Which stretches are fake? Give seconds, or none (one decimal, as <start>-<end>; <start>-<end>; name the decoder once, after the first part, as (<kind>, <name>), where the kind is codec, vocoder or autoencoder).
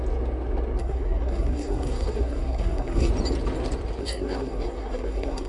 0.8-3.1 (codec, SNAC); 4.0-5.5